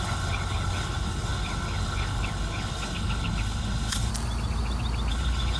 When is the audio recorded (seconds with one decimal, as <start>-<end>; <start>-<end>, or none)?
4.1-5.1